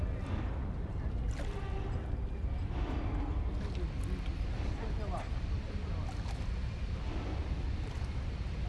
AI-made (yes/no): no